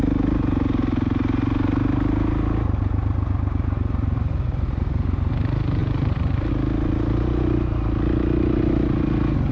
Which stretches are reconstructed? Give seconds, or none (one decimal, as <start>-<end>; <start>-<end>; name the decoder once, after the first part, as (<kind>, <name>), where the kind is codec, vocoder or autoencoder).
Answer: 5.8-6.5 (vocoder, BigVGAN v2)